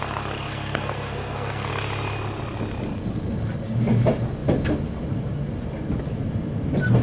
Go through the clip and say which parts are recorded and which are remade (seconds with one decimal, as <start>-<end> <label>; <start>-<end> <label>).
0.0-0.5 recorded; 0.5-1.7 remade; 1.7-7.0 recorded